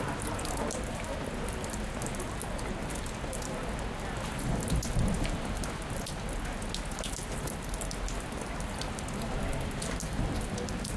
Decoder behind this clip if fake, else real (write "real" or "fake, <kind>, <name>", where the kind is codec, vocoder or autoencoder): real